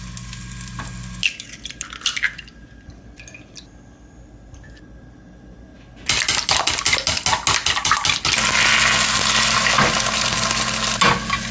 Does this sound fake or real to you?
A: real